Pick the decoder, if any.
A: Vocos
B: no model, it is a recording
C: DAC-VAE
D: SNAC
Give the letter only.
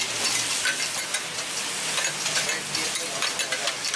B